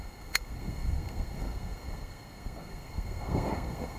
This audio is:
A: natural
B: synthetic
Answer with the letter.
B